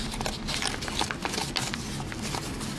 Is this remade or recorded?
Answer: recorded